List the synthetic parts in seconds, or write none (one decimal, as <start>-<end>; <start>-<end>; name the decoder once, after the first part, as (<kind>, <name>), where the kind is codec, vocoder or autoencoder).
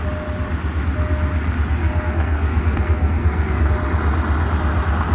1.8-3.7 (codec, SNAC)